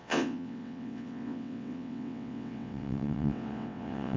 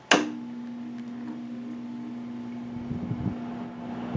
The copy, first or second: first